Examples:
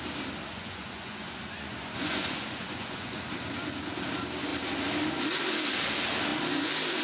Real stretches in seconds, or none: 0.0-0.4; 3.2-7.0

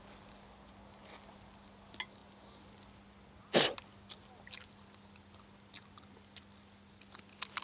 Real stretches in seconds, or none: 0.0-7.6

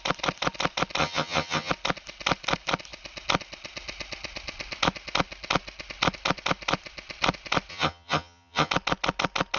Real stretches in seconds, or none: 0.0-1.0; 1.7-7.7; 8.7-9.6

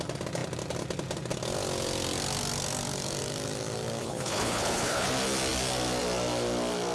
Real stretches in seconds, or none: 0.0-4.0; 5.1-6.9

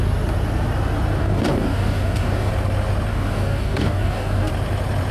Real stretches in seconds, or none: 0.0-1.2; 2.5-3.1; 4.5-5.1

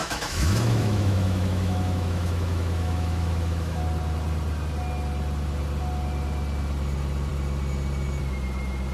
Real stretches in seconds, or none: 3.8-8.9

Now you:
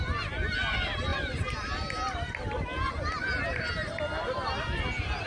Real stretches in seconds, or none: 0.0-5.3

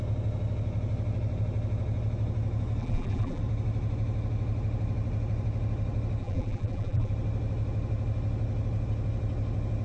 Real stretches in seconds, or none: 0.0-2.8; 3.4-6.2; 7.1-9.8